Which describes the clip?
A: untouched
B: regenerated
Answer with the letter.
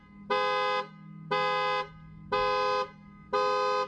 A